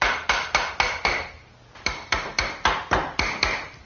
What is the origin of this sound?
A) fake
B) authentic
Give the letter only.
B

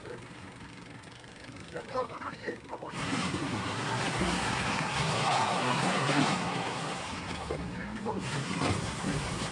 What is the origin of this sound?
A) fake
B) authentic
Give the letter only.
A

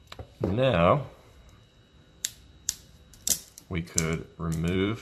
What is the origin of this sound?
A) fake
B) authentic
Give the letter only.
A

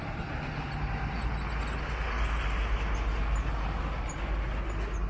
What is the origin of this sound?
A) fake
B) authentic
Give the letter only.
B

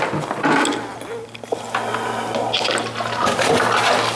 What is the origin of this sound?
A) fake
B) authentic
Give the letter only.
B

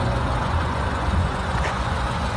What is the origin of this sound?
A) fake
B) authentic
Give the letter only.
A